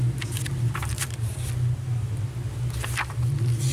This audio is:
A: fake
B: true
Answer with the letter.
B